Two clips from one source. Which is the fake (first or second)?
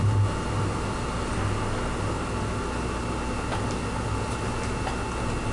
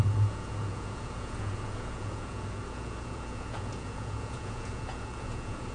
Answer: second